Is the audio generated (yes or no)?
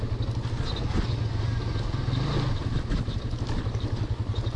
no